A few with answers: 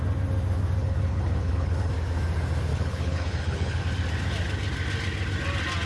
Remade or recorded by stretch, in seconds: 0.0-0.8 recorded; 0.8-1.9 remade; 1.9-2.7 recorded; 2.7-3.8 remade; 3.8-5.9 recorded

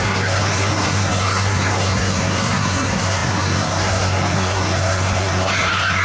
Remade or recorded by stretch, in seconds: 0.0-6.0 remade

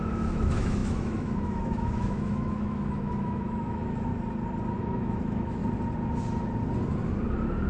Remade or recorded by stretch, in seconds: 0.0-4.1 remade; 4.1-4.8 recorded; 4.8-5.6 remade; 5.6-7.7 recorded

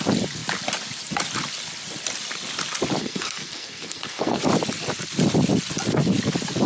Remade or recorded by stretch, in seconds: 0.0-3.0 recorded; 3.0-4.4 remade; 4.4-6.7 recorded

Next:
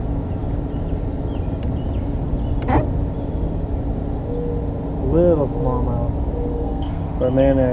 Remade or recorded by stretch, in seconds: 0.0-6.5 recorded; 6.5-7.0 remade; 7.0-7.7 recorded